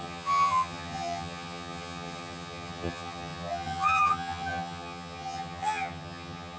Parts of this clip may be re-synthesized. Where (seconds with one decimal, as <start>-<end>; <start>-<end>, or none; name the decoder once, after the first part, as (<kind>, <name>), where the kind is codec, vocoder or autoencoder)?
0.0-6.6 (vocoder, HiFi-GAN)